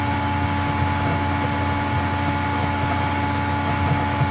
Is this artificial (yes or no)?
no